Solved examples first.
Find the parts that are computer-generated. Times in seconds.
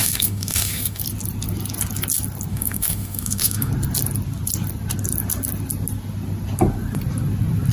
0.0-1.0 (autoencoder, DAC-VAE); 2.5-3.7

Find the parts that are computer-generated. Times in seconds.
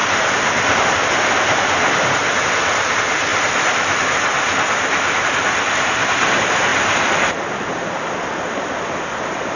0.0-0.8 (vocoder, BigVGAN v2)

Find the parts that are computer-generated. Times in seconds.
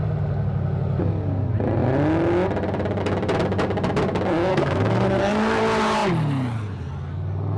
4.5-5.6 (codec, SNAC)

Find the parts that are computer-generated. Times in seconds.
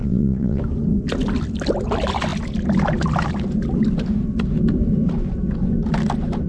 0.0-0.6 (vocoder, WaveNeXt)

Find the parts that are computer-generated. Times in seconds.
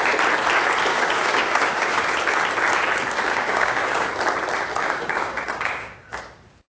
0.9-2.1 (codec, DAC); 3.3-4.1; 4.7-6.2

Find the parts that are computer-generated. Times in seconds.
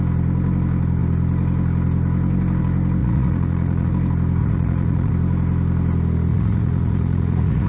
3.0-3.9 (vocoder, Vocos); 4.4-5.1; 6.3-7.7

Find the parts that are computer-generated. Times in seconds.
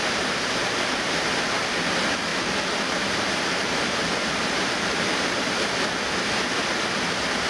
0.0-1.3 (vocoder, BigVGAN v2); 2.3-5.7